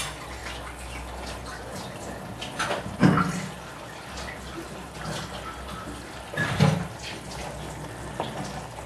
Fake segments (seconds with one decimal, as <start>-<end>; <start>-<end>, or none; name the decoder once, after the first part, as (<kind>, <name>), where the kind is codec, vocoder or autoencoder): none